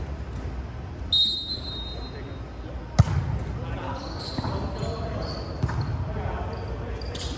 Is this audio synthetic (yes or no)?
no